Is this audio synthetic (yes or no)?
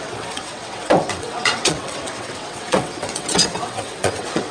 yes